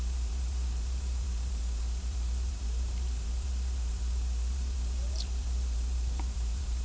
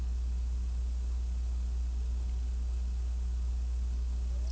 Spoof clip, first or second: first